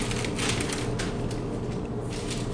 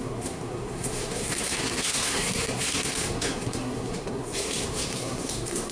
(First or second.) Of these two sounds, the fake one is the second